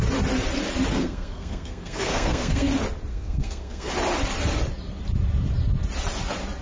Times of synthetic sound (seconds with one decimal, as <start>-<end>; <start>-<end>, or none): 0.9-2.7; 3.1-3.9